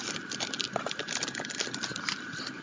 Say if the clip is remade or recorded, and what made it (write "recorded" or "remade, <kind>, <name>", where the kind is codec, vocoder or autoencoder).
recorded